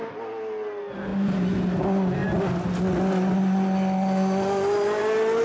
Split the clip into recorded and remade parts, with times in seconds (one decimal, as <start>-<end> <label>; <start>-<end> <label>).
0.0-5.4 recorded